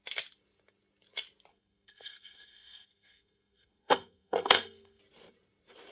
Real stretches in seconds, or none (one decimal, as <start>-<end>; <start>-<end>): 0.0-1.5; 5.0-5.9